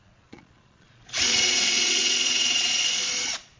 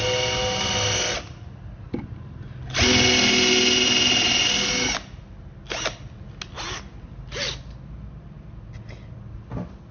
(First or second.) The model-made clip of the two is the first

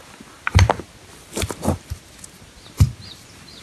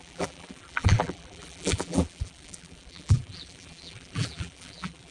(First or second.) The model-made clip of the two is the second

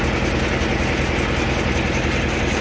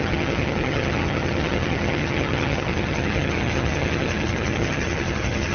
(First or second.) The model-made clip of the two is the second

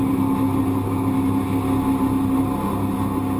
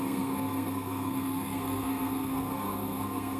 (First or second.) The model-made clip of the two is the second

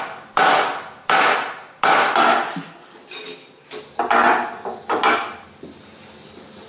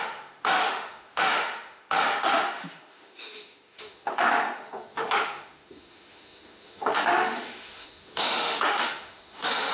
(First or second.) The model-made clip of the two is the second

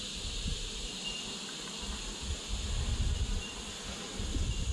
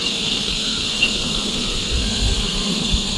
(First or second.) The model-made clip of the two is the second